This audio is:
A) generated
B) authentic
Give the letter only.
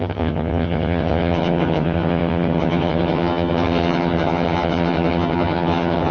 A